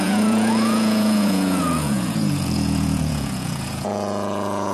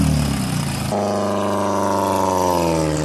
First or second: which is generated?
first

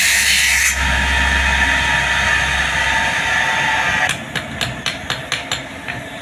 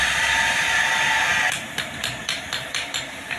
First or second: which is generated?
second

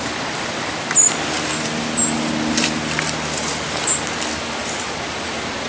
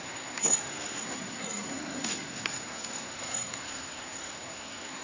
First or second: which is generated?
second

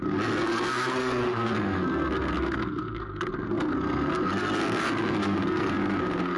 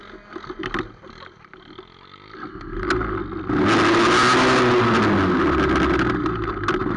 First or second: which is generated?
first